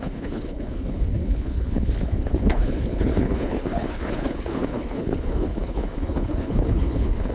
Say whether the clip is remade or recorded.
remade